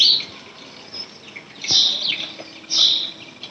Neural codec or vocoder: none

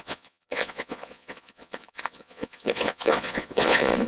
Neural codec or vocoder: vocoder, Vocos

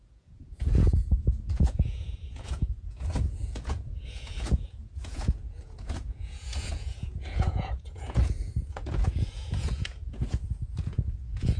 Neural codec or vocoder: vocoder, Vocos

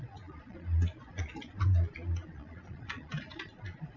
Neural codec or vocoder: vocoder, Vocos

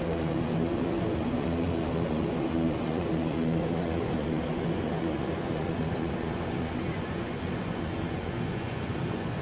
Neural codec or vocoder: vocoder, Vocos